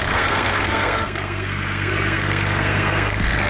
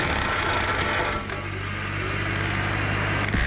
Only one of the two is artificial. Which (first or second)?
first